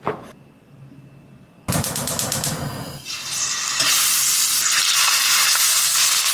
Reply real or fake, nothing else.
real